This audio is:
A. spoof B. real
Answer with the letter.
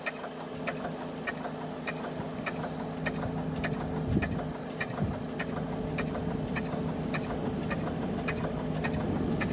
B